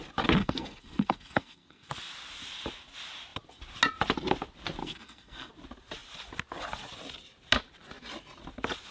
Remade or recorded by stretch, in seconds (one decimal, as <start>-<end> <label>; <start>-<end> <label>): 0.0-0.4 recorded; 0.4-1.9 remade; 1.9-4.8 recorded; 4.8-5.5 remade; 5.5-8.9 recorded